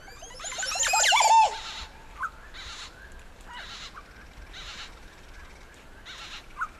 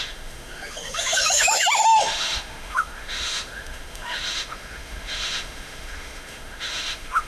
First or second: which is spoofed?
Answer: second